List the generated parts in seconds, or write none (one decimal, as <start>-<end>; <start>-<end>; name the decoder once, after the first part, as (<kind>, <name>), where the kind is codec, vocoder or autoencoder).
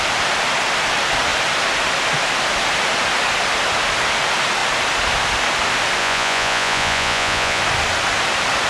6.0-7.6 (vocoder, Vocos)